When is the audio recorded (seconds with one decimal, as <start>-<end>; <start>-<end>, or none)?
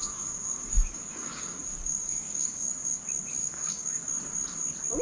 3.0-3.4; 4.0-5.0